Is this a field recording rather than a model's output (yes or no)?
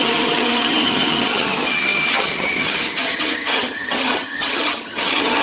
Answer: no